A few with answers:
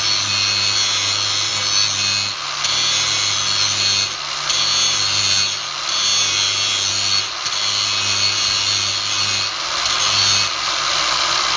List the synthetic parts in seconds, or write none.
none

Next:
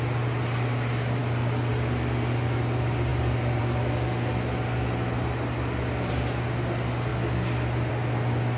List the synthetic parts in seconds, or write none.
none